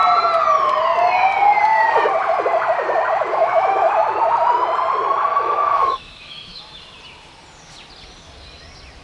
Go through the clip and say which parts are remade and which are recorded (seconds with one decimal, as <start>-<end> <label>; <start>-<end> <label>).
0.0-3.3 recorded; 3.3-3.9 remade; 3.9-5.3 recorded; 5.3-6.6 remade; 6.6-9.0 recorded